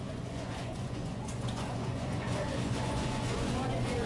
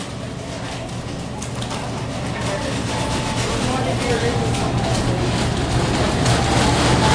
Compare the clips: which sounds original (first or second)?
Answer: second